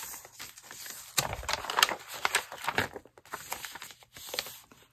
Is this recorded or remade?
recorded